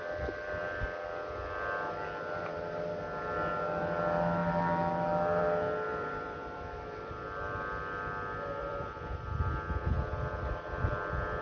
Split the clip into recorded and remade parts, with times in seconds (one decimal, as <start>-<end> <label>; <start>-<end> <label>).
0.0-5.9 recorded; 5.9-7.1 remade; 7.1-8.6 recorded; 8.6-9.2 remade; 9.2-11.4 recorded